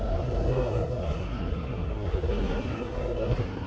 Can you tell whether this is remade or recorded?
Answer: remade